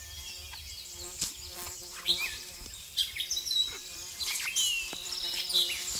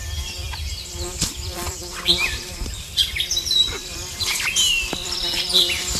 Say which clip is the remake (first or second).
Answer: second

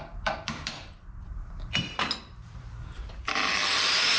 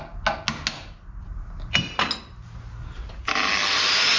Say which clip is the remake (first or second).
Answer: first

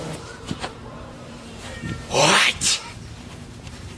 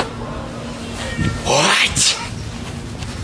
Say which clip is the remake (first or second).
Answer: first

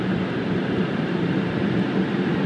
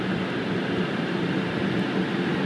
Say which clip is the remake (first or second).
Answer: first